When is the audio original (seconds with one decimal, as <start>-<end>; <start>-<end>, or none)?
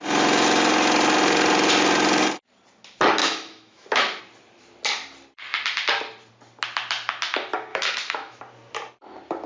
0.0-3.2; 4.2-7.7; 8.4-9.5